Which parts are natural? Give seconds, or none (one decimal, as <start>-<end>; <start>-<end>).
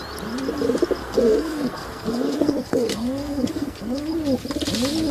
0.0-1.0; 4.1-5.1